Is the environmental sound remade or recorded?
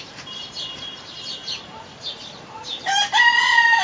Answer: remade